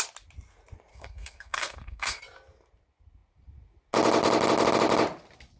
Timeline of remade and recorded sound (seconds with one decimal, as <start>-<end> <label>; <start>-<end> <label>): 0.0-0.9 recorded; 0.9-2.2 remade; 2.2-5.6 recorded